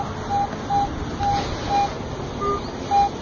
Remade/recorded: recorded